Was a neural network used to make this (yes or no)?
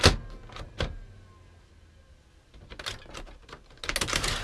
no